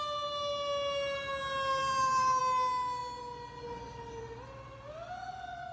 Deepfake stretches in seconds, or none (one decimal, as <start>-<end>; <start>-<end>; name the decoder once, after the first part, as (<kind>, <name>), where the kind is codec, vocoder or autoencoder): 1.8-2.4 (vocoder, BigVGAN v2)